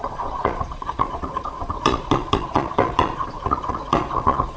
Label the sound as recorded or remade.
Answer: remade